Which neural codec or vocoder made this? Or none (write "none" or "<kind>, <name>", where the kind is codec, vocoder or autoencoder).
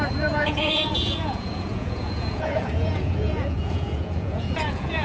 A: vocoder, Vocos